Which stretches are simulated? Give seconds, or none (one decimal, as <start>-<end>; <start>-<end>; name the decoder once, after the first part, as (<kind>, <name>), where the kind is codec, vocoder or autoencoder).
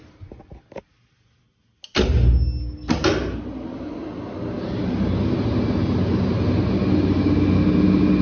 none